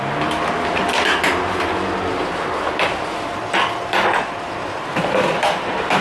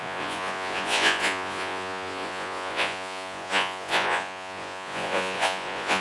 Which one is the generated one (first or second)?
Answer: second